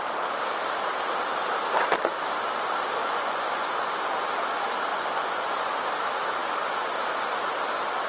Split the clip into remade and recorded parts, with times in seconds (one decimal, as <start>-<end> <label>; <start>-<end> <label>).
0.0-3.0 recorded; 3.0-3.8 remade; 3.8-4.9 recorded; 4.9-5.8 remade; 5.8-8.1 recorded